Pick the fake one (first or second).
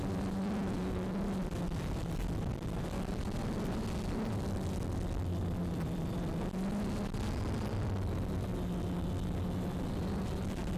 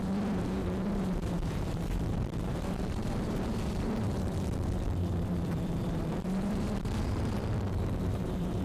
second